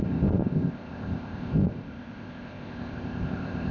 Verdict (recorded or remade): remade